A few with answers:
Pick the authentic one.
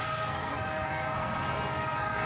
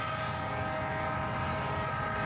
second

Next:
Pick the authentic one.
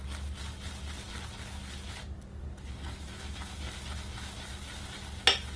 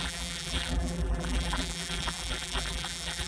first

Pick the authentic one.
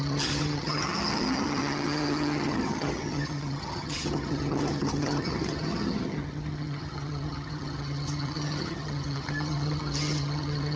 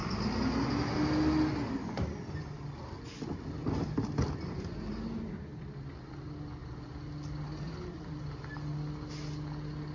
second